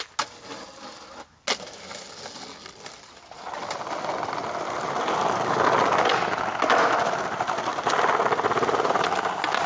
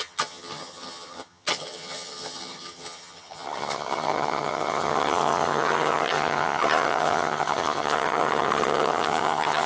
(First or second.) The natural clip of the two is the first